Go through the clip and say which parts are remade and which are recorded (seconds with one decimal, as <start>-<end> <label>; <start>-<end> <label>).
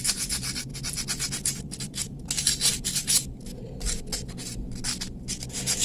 0.0-0.7 recorded; 0.7-2.7 remade; 2.7-5.8 recorded